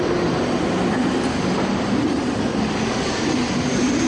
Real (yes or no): yes